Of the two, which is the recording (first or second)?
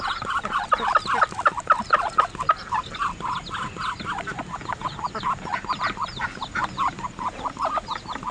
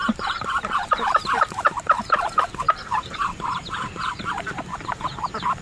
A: first